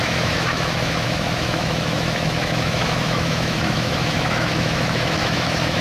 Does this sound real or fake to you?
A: fake